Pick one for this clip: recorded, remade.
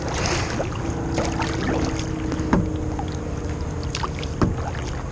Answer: recorded